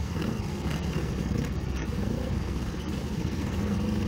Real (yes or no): no